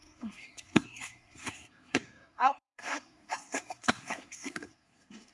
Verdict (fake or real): fake